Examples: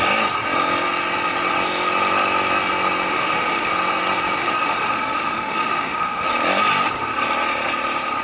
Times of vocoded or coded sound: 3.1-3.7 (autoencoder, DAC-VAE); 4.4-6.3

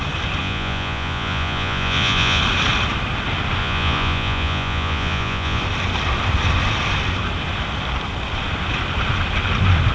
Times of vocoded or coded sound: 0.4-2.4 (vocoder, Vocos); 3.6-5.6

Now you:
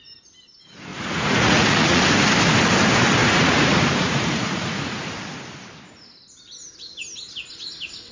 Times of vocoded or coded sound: 0.9-2.0 (vocoder, Vocos); 3.2-5.1

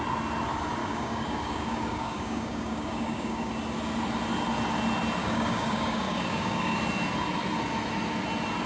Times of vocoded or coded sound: 0.8-3.5 (codec, DAC); 5.2-6.8

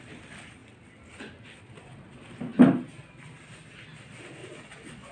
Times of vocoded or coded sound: 4.4-5.1 (vocoder, Vocos)